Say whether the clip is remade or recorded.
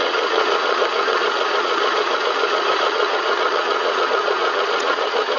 remade